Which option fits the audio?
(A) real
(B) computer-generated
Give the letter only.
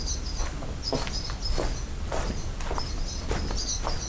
A